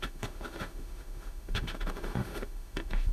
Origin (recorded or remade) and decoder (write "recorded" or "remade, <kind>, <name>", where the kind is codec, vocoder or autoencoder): remade, autoencoder, DAC-VAE